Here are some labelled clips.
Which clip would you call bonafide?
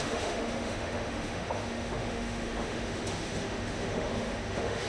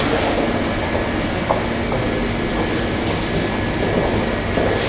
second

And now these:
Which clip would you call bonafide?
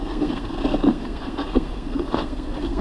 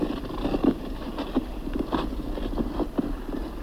second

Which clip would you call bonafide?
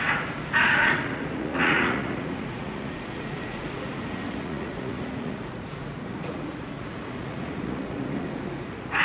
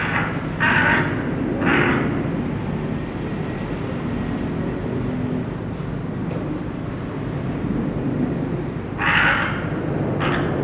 second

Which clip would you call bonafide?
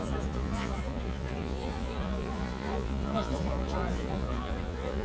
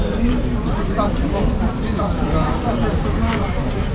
second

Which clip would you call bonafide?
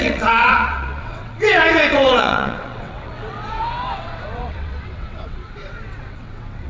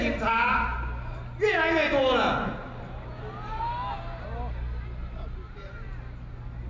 second